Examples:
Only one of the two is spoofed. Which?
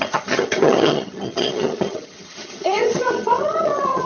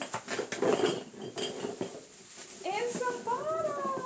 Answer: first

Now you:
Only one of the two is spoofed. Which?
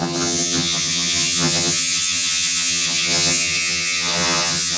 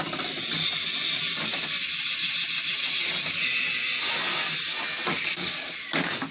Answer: first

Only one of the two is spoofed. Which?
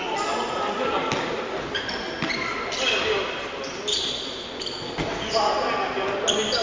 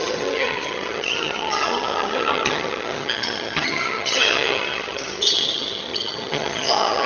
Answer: second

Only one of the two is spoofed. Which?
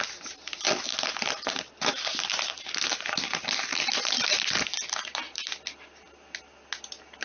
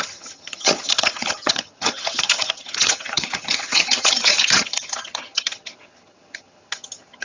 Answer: second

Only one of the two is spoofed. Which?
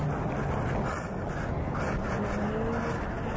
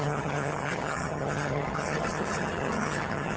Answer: second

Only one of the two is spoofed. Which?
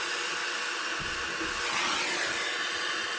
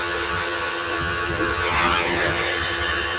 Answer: second